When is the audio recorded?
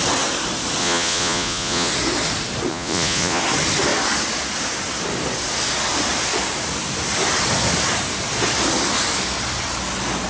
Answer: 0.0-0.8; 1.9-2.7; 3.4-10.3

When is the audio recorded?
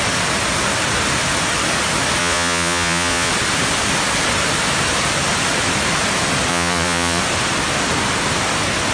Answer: 0.0-2.2; 3.3-6.5; 7.2-8.9